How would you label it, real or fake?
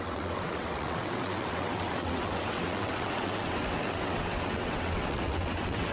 fake